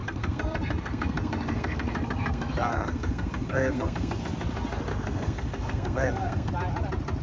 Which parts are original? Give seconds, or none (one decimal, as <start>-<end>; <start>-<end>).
4.2-4.9; 6.5-7.2